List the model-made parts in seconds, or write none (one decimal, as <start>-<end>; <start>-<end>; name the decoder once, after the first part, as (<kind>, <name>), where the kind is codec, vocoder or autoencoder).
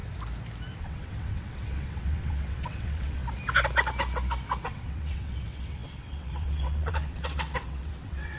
0.8-3.2 (vocoder, WaveNeXt); 4.6-8.4